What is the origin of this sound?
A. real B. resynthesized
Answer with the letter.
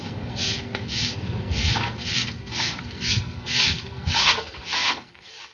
B